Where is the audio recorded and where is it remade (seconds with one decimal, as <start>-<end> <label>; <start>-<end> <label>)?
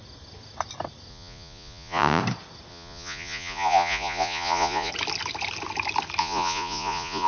0.0-1.1 recorded; 1.1-2.2 remade; 2.2-2.7 recorded; 2.7-4.9 remade; 4.9-6.2 recorded; 6.2-7.3 remade